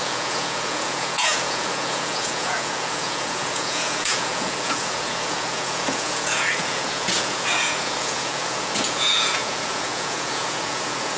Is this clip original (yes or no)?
no